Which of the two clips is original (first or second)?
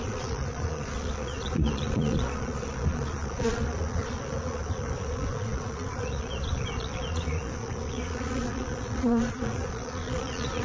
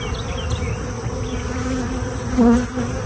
second